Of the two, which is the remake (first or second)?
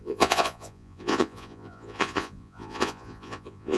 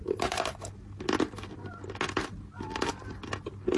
first